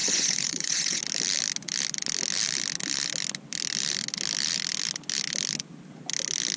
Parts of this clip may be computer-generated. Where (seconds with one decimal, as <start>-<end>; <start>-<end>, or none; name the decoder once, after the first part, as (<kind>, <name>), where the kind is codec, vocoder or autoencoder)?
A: 0.0-1.0 (vocoder, Vocos)